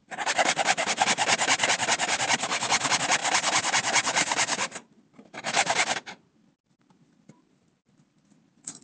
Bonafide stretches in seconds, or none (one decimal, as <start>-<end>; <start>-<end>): 0.0-8.8